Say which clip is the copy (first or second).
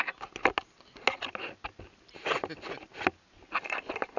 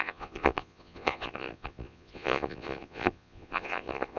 second